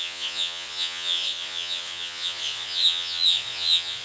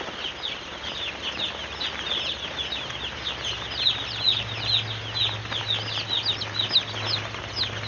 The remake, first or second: first